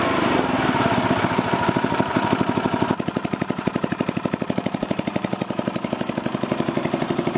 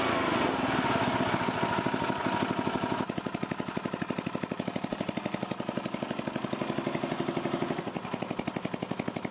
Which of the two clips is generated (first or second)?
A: first